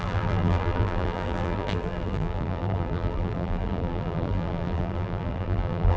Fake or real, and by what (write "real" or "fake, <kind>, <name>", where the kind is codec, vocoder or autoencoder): fake, vocoder, BigVGAN v2